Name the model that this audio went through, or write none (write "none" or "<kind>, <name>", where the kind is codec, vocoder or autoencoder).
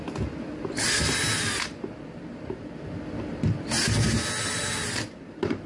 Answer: none